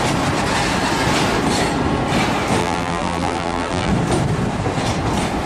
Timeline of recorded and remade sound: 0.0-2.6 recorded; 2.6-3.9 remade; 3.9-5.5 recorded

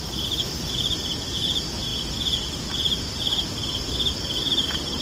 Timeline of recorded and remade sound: 0.0-5.0 recorded